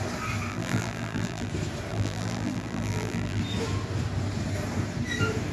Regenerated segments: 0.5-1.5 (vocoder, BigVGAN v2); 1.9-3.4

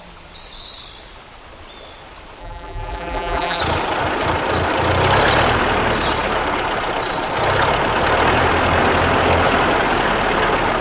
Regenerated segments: 2.4-3.6 (vocoder, BigVGAN v2)

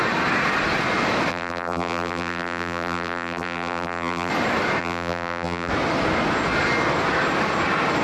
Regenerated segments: 1.3-4.3 (vocoder, BigVGAN v2); 4.8-5.7

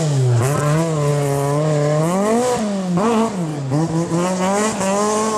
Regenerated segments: 1.1-2.0 (vocoder, BigVGAN v2)